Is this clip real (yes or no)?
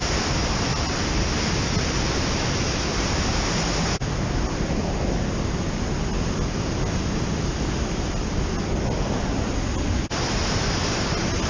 yes